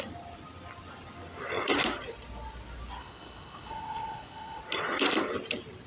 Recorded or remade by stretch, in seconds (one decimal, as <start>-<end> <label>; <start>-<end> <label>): 0.0-3.0 recorded; 3.0-4.6 remade; 4.6-5.9 recorded